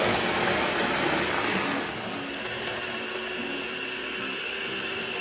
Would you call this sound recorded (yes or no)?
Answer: yes